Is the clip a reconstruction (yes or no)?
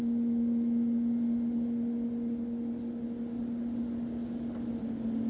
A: no